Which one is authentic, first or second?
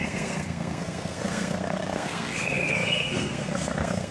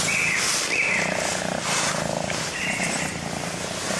second